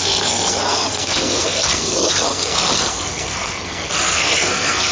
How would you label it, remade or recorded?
remade